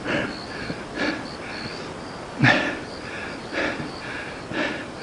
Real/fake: real